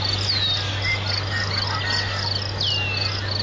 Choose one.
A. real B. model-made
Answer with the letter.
A